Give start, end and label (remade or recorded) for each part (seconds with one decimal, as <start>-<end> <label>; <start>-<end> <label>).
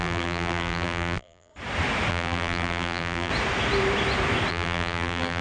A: 0.0-1.5 remade; 1.5-2.1 recorded; 2.1-3.3 remade; 3.3-4.5 recorded; 4.5-5.4 remade